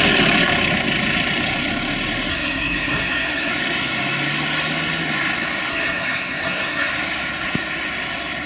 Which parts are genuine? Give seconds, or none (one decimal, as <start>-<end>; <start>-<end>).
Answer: 0.0-2.3; 3.5-5.7; 6.9-8.5